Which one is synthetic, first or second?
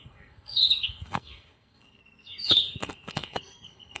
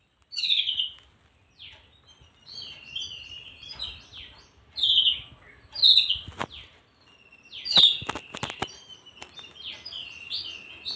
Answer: first